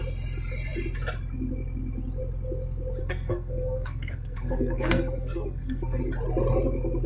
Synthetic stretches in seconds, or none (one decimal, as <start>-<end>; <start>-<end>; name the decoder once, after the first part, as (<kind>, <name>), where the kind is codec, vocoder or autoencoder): 3.0-6.0 (codec, SNAC)